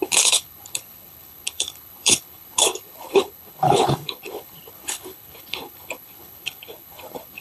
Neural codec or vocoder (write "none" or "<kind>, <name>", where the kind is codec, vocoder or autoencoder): codec, HILCodec